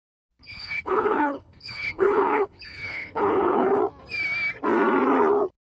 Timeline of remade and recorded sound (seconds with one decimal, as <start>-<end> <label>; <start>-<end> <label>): 0.0-0.4 recorded; 0.4-3.8 remade; 3.8-5.7 recorded